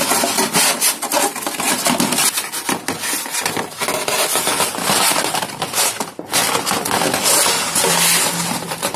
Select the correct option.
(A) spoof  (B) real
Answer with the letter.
B